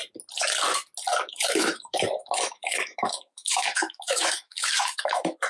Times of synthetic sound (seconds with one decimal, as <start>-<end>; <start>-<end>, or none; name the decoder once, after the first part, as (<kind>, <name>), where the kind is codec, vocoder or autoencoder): 1.2-5.5 (autoencoder, DAC-VAE)